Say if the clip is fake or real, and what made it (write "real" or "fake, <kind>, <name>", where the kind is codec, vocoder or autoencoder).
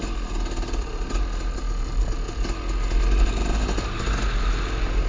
real